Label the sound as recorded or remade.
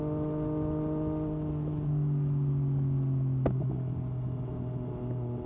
recorded